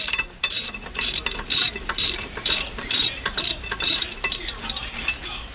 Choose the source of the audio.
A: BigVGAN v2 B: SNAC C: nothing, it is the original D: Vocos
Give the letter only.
A